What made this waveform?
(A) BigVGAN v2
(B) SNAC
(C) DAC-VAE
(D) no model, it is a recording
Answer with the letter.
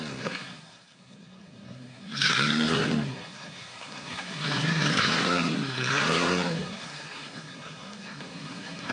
B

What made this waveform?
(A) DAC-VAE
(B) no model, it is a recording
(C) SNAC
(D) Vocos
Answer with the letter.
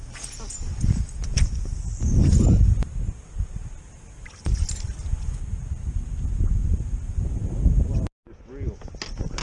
B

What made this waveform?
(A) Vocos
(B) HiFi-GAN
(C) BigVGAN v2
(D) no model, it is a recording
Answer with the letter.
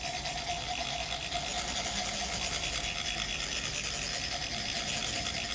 D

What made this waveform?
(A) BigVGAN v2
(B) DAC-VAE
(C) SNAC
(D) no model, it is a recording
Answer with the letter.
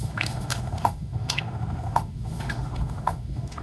B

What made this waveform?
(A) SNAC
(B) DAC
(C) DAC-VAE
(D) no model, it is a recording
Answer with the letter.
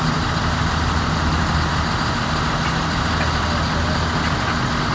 D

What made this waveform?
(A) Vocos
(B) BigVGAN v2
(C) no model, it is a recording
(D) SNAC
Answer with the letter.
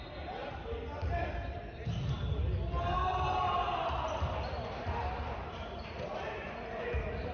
C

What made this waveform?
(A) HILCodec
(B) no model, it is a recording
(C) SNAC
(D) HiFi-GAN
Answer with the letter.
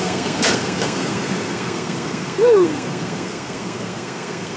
C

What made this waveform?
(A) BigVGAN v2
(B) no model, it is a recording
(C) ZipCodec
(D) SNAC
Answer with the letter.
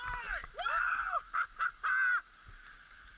B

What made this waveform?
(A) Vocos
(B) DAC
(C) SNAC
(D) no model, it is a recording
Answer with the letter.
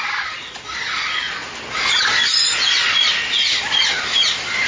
D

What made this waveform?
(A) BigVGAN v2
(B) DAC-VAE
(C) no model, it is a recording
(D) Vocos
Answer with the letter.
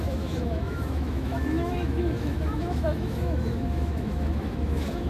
B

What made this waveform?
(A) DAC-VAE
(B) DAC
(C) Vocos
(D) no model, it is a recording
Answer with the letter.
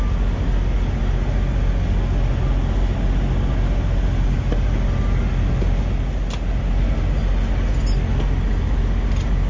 D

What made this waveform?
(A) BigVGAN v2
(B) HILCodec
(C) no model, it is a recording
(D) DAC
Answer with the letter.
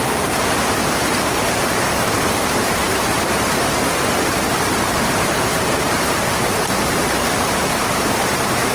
A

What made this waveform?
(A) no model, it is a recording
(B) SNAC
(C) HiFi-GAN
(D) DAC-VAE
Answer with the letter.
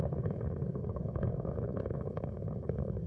B